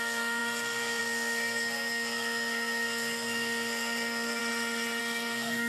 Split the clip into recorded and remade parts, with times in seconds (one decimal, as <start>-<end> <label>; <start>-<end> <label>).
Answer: 0.0-4.4 remade; 4.4-5.0 recorded; 5.0-5.7 remade